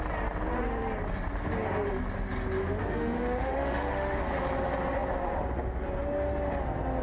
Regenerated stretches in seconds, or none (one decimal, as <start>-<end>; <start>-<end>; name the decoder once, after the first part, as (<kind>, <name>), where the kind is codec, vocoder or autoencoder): 2.8-4.2 (autoencoder, DAC-VAE)